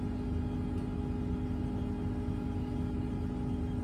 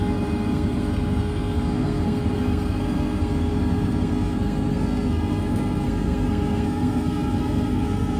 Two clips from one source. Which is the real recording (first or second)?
first